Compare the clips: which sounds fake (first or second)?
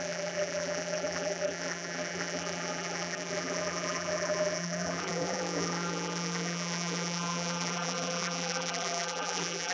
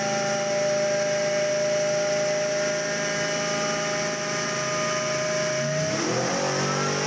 first